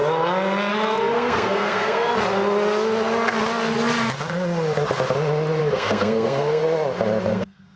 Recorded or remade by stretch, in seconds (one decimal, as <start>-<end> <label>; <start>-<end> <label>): 0.0-0.7 recorded; 0.7-2.1 remade; 2.1-5.6 recorded; 5.6-6.6 remade; 6.6-7.3 recorded; 7.3-7.8 remade